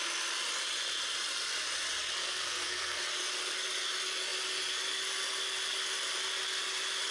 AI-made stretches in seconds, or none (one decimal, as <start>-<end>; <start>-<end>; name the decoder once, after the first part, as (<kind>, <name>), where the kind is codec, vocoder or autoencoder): 2.2-3.0 (codec, SNAC)